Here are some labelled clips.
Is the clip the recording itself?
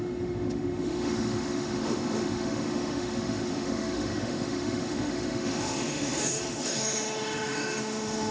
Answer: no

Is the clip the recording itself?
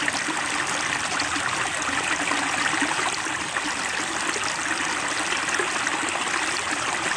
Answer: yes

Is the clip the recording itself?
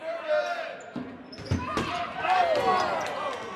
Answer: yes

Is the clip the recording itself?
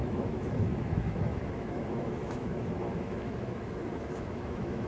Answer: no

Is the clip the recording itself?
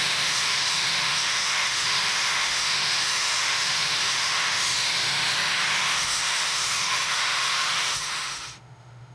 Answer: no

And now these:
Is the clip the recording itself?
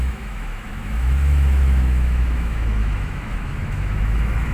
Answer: no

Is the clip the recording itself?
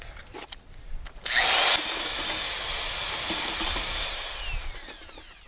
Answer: yes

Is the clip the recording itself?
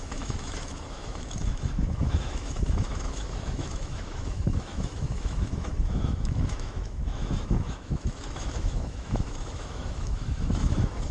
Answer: no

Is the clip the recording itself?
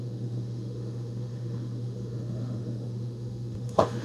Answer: no